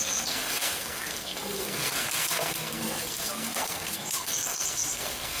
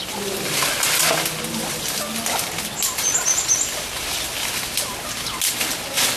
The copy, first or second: first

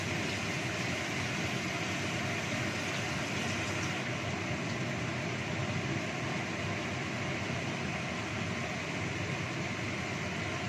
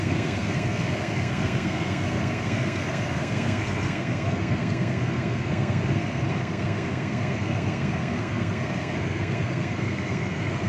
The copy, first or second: second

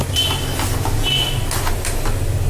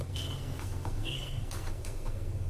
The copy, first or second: second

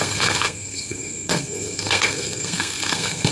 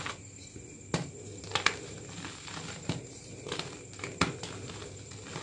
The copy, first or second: first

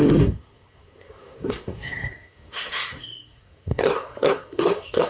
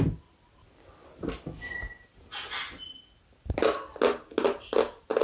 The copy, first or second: first